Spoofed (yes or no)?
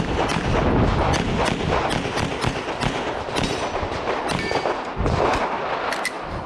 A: no